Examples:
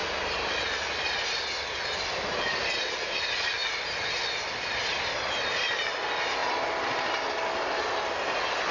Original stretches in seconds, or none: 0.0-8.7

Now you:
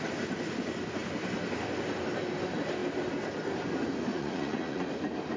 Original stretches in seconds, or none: 0.0-4.1; 4.9-5.4

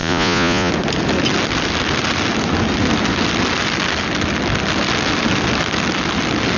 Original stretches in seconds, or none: 0.7-6.6

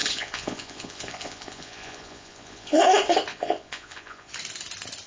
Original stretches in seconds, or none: 2.8-3.3; 4.3-5.1

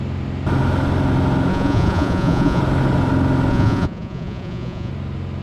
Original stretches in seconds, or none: 0.0-1.5; 2.6-3.5; 4.9-5.4